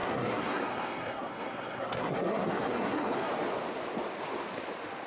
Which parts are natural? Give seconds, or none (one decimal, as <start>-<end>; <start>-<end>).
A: 3.3-5.1

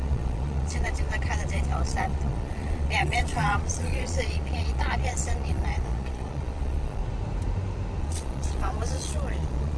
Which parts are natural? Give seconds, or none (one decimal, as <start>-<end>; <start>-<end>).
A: 7.0-8.0

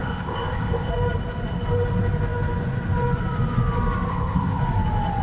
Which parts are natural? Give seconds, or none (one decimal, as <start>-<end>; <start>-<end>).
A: 0.9-4.1; 4.6-5.2

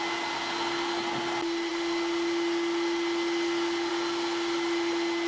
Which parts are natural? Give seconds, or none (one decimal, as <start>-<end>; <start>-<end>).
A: 0.0-5.3